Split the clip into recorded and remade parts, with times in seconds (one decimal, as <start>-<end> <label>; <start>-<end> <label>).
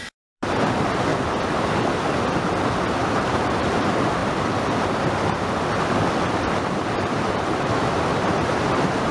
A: 0.0-1.1 remade; 1.1-3.2 recorded; 3.2-4.2 remade; 4.2-6.6 recorded; 6.6-9.1 remade